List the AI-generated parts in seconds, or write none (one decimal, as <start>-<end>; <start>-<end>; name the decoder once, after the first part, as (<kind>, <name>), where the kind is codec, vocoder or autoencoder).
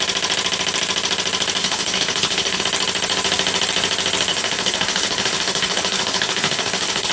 1.6-2.6 (codec, HILCodec); 4.3-7.1